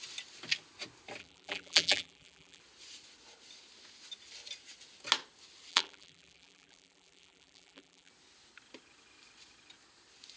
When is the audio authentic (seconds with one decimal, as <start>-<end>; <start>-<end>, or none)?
0.0-1.2; 2.6-5.7; 8.1-10.4